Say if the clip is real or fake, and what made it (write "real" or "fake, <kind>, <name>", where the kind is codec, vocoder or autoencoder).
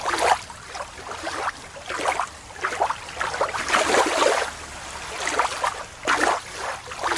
real